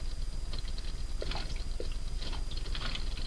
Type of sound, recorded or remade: recorded